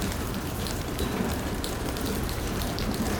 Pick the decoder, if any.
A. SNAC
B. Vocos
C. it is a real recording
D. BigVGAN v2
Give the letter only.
D